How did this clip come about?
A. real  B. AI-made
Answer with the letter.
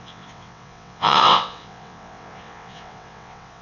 B